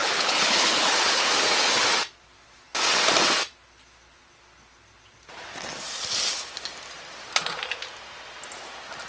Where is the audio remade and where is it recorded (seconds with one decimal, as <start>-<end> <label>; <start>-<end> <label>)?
0.0-1.3 remade; 1.3-9.1 recorded